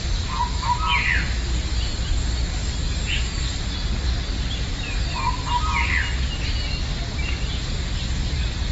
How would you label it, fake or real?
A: real